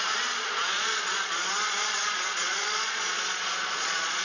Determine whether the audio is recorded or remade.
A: remade